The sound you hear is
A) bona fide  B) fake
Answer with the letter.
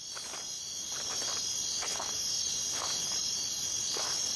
A